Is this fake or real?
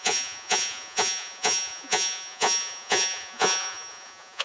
fake